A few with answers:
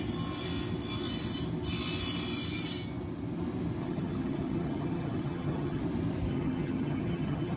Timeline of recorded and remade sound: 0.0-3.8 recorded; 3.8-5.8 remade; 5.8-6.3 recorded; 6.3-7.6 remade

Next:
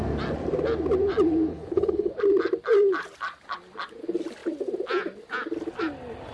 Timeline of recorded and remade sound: 0.0-1.5 recorded; 1.5-2.1 remade; 2.1-6.3 recorded

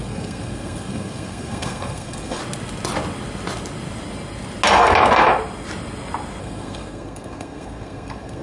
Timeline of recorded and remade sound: 0.0-2.4 remade; 2.4-6.4 recorded; 6.4-8.4 remade

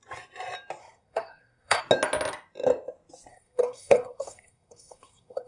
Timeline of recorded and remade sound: 0.0-0.8 recorded; 0.8-1.8 remade; 1.8-3.3 recorded; 3.3-5.5 remade

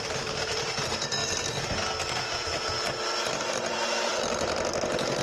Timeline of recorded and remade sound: 0.0-1.2 remade; 1.2-3.4 recorded; 3.4-4.1 remade; 4.1-4.8 recorded; 4.8-5.2 remade